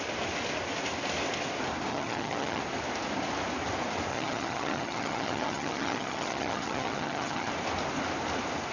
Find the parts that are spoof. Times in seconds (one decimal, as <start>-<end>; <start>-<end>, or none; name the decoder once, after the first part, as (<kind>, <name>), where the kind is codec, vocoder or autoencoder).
1.9-2.6 (vocoder, HiFi-GAN); 4.1-7.5